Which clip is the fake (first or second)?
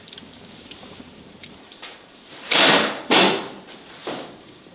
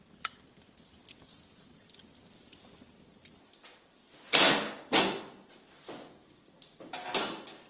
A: first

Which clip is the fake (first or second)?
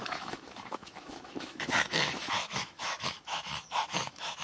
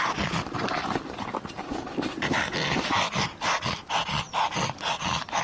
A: first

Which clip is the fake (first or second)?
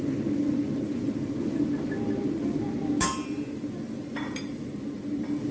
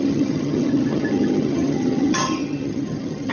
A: second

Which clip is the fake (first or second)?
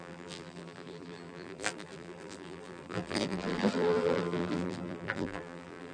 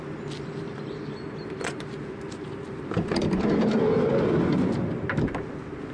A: first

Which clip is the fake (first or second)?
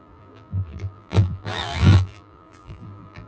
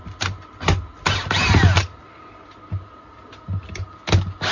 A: first